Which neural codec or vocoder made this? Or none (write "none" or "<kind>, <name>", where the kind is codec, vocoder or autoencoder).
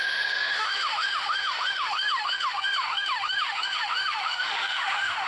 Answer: autoencoder, DAC-VAE